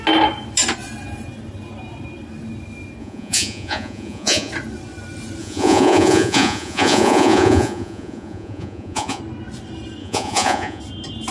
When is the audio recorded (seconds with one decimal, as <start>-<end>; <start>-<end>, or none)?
0.0-3.0; 4.5-5.4; 9.2-10.0; 10.8-11.3